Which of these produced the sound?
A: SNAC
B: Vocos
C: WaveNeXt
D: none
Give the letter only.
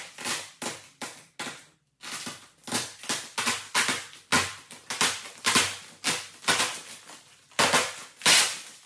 D